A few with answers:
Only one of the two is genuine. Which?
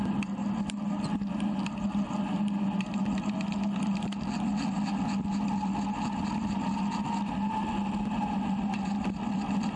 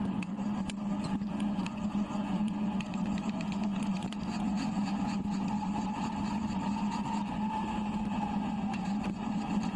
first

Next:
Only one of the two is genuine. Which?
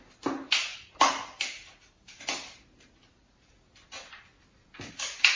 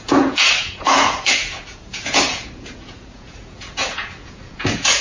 first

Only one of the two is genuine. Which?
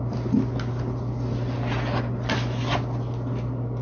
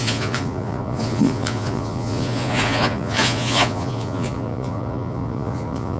first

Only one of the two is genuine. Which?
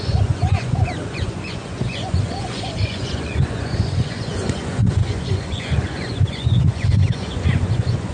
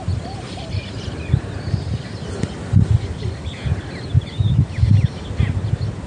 second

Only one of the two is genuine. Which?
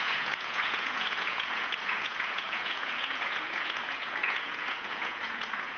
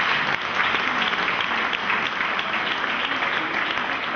second